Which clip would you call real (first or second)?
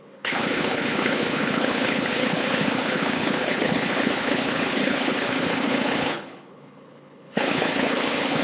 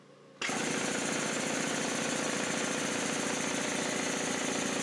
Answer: second